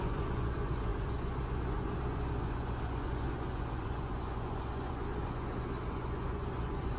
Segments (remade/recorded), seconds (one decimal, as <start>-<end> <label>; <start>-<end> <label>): 0.0-7.0 remade